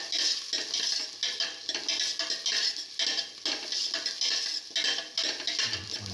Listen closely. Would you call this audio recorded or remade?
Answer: recorded